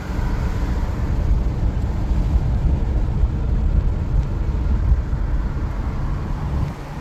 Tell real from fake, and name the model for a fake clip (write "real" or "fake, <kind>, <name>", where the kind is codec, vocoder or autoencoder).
real